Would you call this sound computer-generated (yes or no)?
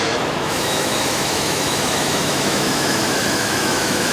yes